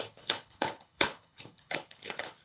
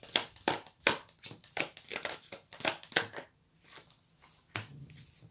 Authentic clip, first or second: second